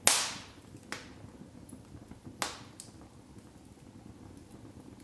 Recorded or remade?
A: recorded